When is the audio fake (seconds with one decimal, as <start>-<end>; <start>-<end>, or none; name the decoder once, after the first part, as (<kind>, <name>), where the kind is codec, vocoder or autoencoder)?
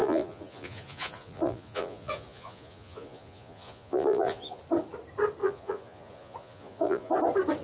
0.0-4.6 (vocoder, Vocos); 5.4-7.1